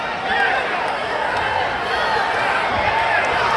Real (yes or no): yes